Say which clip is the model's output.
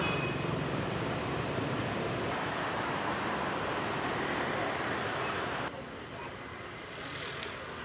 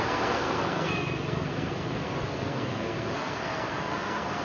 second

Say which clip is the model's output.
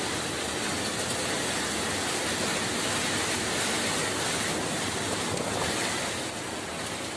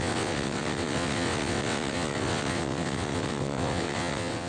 second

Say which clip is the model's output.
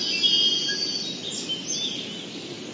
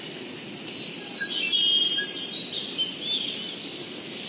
second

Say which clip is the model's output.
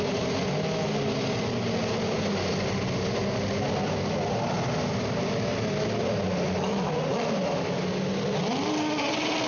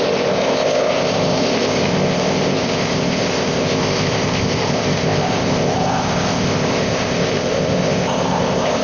second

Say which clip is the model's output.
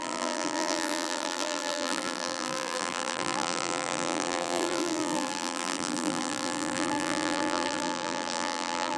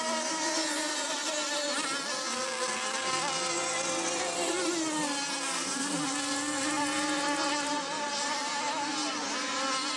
first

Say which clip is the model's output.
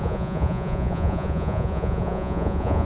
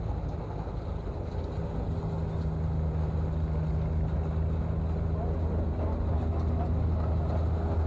first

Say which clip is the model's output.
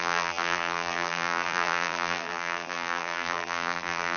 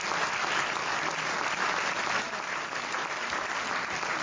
first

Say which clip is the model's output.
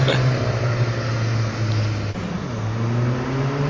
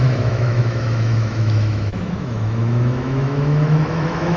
second